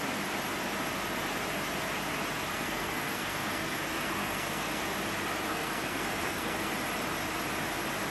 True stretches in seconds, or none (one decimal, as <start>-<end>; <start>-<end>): 0.0-2.5; 4.8-5.5; 6.7-8.1

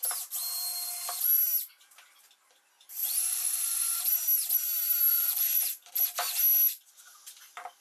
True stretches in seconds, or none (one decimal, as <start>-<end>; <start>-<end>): 0.0-3.0; 4.0-5.1; 5.9-7.8

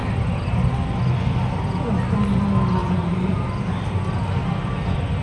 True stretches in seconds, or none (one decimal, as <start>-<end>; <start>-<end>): 0.0-2.8; 4.0-5.2

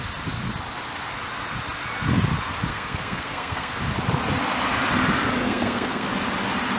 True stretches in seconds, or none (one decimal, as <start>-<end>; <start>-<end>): 0.0-2.7; 3.7-5.4; 6.1-6.8

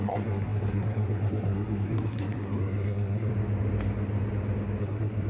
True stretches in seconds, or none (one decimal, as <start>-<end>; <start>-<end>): 3.3-4.8

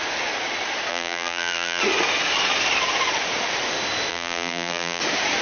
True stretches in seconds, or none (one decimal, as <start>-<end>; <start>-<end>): 0.0-0.9; 1.8-4.1; 5.0-5.4

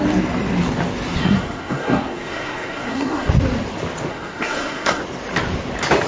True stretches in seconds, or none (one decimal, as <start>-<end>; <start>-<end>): 0.0-1.2; 3.3-4.1; 5.0-6.1

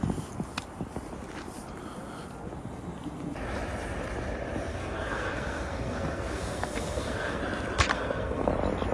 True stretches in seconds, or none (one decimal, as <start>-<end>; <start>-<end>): 0.0-4.7; 7.4-7.9; 8.5-8.9